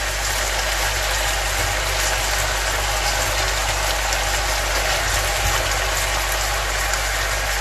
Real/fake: real